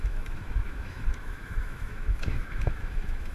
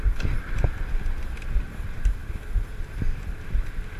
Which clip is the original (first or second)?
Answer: second